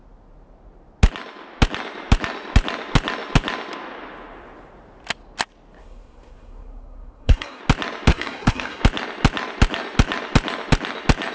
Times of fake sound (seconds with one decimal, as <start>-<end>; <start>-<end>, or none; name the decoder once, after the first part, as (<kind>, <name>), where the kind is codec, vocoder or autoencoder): 5.8-7.6 (codec, SNAC); 8.1-8.8